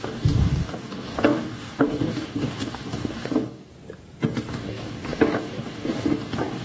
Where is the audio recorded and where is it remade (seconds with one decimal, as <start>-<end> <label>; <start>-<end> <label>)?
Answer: 0.0-3.7 remade; 3.7-4.5 recorded; 4.5-6.6 remade